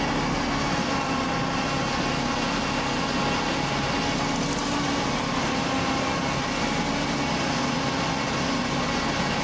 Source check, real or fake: real